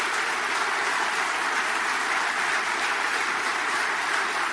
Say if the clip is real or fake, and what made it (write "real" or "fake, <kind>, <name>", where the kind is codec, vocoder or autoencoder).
real